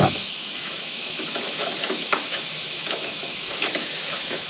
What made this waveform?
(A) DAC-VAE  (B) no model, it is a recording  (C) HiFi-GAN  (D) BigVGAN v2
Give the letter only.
A